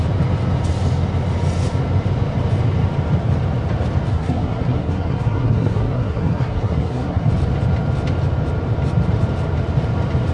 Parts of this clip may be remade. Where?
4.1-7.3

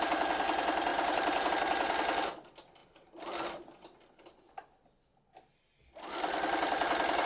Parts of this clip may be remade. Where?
0.9-1.5

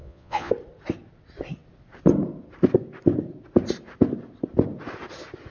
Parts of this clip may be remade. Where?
0.0-0.5

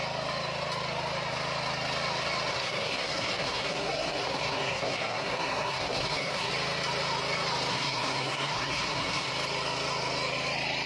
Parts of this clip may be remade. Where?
2.5-6.5; 7.7-9.3

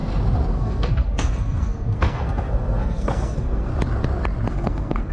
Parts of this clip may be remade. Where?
0.5-3.7; 4.5-5.1

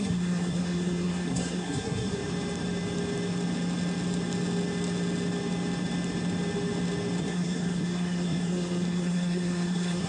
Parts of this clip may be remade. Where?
0.0-2.2; 7.2-10.1